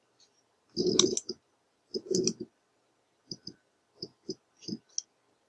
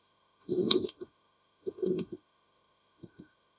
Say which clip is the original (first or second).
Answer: first